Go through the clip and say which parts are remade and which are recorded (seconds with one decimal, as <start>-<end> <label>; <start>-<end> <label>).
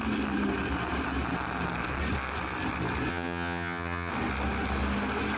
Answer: 0.0-3.1 recorded; 3.1-4.1 remade; 4.1-5.4 recorded